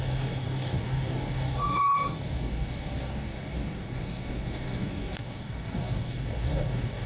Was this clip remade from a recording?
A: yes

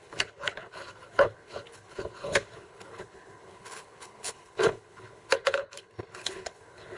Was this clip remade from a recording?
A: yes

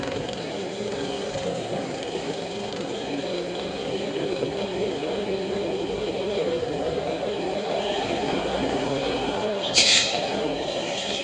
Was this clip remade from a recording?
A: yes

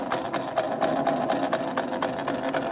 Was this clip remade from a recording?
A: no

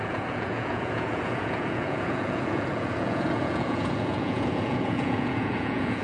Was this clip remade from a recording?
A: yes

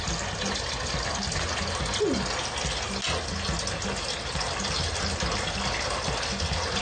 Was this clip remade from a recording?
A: no